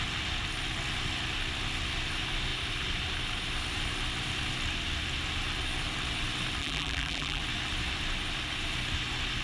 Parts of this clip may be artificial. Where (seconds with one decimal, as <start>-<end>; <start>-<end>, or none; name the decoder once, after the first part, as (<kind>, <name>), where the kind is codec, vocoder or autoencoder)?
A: 6.6-7.4 (vocoder, BigVGAN v2)